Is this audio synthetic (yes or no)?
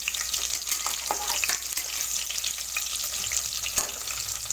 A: no